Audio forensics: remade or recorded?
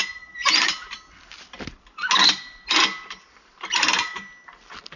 recorded